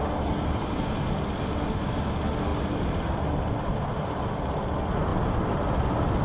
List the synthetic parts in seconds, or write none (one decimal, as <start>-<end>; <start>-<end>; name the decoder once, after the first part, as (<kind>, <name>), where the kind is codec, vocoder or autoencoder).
0.0-0.8 (codec, DAC)